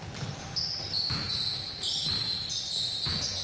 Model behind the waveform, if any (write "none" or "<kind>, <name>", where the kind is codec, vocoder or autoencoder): none